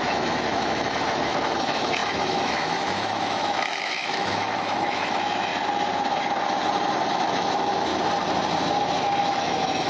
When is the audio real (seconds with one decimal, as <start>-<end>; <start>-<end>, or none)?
5.5-7.1; 7.9-9.2

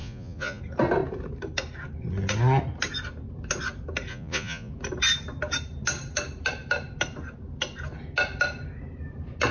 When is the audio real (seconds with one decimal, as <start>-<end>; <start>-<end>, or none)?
0.6-4.1; 4.7-9.5

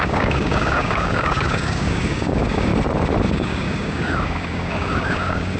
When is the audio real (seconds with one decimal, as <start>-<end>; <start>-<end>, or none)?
2.7-3.3

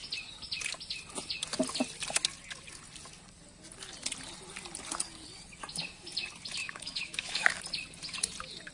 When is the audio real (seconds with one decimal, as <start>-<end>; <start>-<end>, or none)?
0.0-6.6; 7.6-8.7

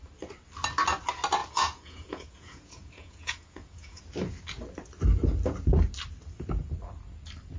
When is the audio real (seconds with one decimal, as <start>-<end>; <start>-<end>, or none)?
0.0-1.4; 4.0-7.6

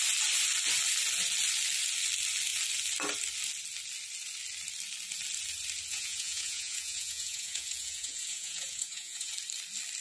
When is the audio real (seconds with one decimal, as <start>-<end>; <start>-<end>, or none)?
0.0-5.9; 9.3-10.0

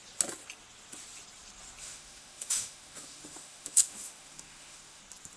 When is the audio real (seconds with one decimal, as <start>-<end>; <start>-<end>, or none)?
0.0-1.8; 5.0-5.4